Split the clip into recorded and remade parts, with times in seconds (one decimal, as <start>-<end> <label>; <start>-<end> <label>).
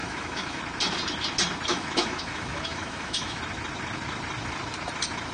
0.0-0.6 remade; 0.6-1.7 recorded; 1.7-3.4 remade; 3.4-5.3 recorded